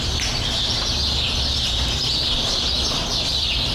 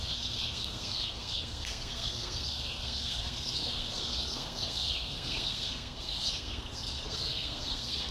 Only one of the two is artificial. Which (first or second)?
second